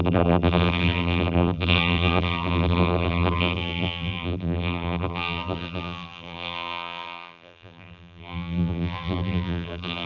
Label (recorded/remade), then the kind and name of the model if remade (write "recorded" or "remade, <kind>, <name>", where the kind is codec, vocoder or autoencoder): remade, vocoder, BigVGAN v2